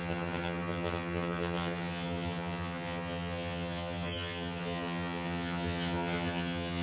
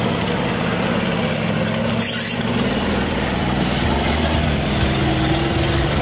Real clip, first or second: second